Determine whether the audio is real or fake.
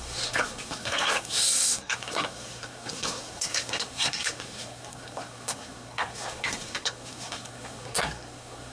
fake